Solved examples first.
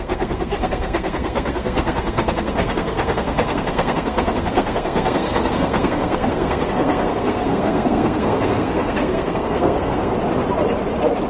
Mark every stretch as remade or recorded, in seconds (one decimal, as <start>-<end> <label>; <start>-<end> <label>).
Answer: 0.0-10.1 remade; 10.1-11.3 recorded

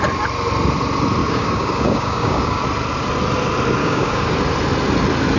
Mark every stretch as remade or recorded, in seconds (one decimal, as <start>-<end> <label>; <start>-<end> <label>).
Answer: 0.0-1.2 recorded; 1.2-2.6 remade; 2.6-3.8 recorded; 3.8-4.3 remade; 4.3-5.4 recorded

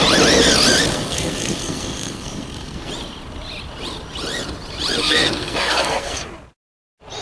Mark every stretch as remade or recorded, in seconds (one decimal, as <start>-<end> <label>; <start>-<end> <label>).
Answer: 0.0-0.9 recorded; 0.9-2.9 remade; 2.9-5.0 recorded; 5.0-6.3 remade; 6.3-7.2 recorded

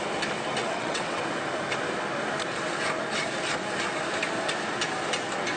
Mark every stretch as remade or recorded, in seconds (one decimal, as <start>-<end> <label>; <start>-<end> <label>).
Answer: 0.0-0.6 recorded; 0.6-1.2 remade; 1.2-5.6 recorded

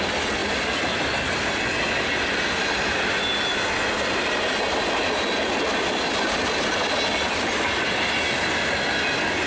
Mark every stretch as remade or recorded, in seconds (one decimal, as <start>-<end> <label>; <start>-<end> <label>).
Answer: 0.0-9.5 recorded

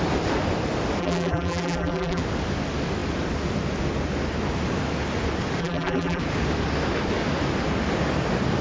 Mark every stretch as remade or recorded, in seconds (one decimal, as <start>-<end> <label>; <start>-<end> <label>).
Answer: 0.0-1.0 recorded; 1.0-2.2 remade; 2.2-5.6 recorded; 5.6-6.2 remade; 6.2-8.6 recorded